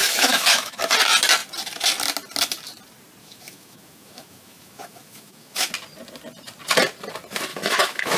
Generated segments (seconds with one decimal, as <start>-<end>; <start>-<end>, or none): 0.0-0.8; 3.2-5.7; 7.5-8.2